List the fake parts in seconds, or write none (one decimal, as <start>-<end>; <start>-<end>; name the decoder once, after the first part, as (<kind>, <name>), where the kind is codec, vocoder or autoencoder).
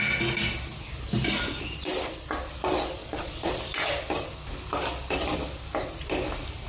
3.0-3.5 (vocoder, Vocos)